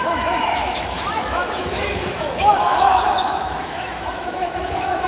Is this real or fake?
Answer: fake